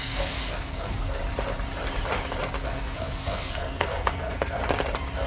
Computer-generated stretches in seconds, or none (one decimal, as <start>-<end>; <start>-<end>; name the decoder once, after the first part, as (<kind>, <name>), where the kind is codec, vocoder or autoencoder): 0.0-1.2 (codec, SNAC); 2.6-4.6